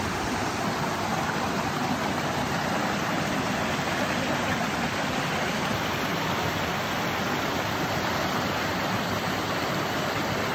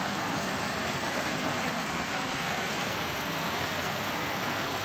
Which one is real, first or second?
first